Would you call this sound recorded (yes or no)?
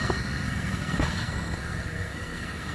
no